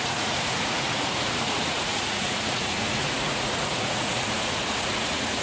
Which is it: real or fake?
fake